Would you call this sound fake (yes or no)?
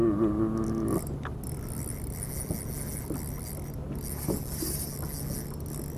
no